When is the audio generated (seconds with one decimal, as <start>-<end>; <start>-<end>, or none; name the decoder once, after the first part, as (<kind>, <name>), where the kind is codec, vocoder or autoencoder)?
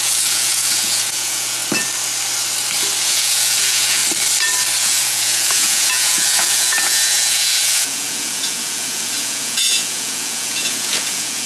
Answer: 0.0-1.6 (vocoder, Vocos); 3.0-4.0; 4.8-11.5